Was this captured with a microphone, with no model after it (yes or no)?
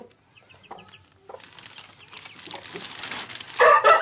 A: yes